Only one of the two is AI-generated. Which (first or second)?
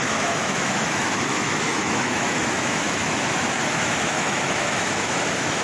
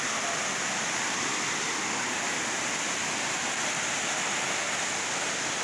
first